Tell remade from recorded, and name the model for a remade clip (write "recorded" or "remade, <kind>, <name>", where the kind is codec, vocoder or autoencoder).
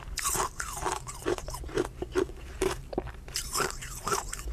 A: remade, vocoder, BigVGAN v2